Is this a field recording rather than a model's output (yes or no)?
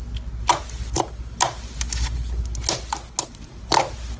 yes